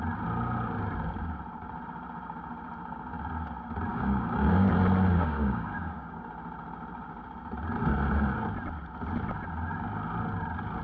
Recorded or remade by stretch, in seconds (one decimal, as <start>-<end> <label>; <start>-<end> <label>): 0.0-3.9 recorded; 3.9-4.7 remade; 4.7-5.2 recorded; 5.2-6.3 remade; 6.3-10.8 recorded